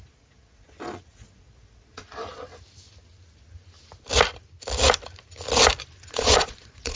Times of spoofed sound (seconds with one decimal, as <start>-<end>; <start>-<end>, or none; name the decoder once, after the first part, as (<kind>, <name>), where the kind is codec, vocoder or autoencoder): 0.0-2.5 (vocoder, Vocos); 6.1-7.0